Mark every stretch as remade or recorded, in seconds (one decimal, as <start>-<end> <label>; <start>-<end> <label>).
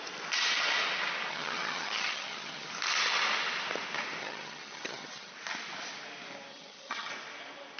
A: 0.0-1.3 recorded; 1.3-2.7 remade; 2.7-4.2 recorded; 4.2-5.3 remade; 5.3-6.5 recorded; 6.5-7.1 remade; 7.1-7.8 recorded